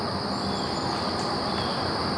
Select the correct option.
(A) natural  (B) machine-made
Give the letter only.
A